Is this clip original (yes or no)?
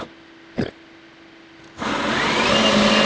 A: yes